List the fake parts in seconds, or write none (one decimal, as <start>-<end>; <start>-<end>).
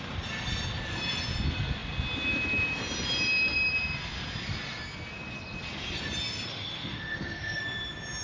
6.5-7.6